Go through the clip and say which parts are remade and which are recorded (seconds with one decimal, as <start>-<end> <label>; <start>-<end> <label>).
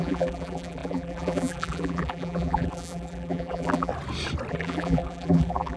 0.0-3.9 remade; 3.9-4.5 recorded; 4.5-5.8 remade